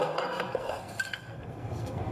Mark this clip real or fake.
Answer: fake